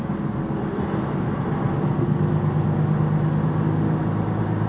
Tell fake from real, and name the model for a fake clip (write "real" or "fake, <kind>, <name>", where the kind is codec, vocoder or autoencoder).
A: real